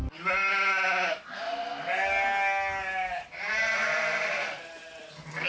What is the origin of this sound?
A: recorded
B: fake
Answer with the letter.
A